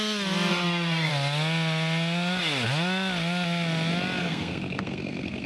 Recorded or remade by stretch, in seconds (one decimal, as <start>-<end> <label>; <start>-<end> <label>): 0.0-0.5 recorded; 0.5-1.1 remade; 1.1-4.2 recorded; 4.2-5.5 remade